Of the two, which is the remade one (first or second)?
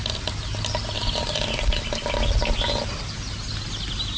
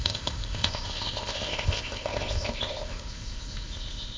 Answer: second